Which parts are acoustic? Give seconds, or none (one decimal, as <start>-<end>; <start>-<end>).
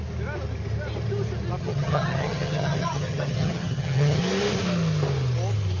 0.0-1.6; 4.2-5.8